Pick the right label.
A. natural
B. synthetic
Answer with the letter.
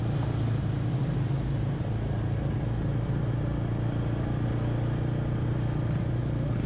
A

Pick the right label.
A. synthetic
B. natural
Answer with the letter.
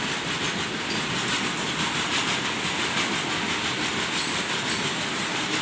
B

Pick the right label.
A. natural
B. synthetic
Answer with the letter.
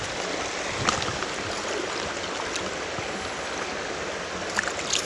A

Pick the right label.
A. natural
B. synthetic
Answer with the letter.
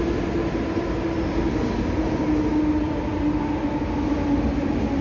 A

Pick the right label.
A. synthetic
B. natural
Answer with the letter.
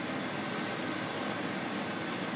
B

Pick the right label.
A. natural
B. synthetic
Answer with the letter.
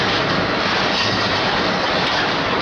A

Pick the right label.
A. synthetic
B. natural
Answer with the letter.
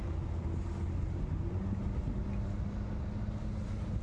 B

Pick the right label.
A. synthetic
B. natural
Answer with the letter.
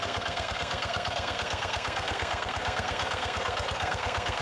A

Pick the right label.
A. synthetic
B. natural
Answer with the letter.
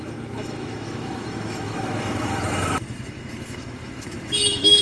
A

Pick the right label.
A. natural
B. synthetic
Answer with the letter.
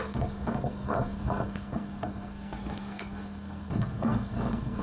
B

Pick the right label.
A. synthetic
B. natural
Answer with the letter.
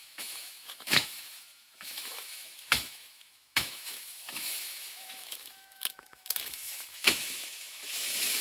A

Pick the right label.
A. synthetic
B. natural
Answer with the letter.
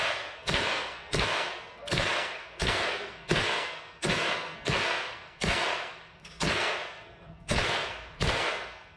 A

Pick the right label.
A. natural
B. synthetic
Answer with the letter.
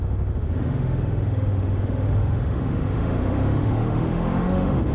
B